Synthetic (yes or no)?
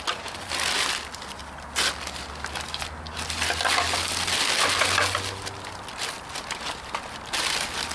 no